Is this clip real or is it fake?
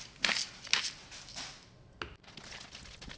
real